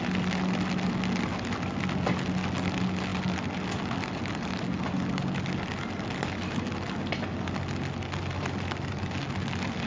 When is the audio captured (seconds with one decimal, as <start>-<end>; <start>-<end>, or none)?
0.0-9.9